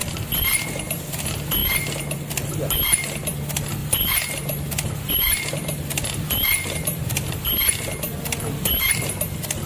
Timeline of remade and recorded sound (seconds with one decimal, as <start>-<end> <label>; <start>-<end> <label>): 0.0-3.8 recorded; 3.8-7.4 remade; 7.4-9.7 recorded